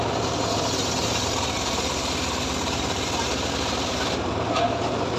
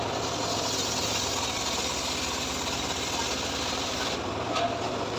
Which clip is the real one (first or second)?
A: second